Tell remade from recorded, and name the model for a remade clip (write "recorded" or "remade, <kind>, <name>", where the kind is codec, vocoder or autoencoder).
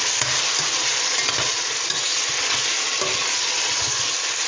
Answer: recorded